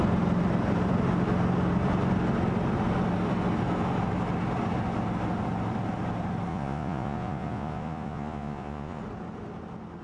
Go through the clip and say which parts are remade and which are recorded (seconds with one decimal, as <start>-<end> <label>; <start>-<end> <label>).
0.0-6.5 recorded; 6.5-9.0 remade; 9.0-10.0 recorded